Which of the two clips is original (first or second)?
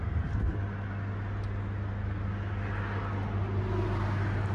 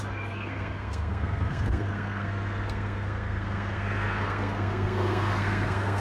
first